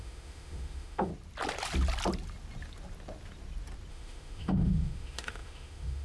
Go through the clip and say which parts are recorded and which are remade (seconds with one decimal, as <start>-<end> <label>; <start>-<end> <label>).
0.0-1.1 remade; 1.1-3.9 recorded; 3.9-6.0 remade